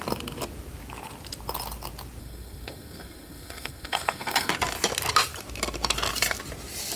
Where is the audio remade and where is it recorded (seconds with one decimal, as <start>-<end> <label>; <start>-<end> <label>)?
0.0-2.2 recorded; 2.2-4.5 remade; 4.5-7.0 recorded